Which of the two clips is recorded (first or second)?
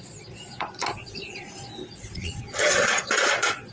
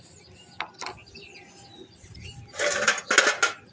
second